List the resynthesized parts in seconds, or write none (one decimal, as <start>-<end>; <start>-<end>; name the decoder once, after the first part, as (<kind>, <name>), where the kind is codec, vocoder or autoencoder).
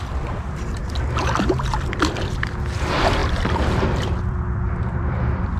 0.0-0.8 (vocoder, BigVGAN v2); 2.2-3.2; 4.3-5.6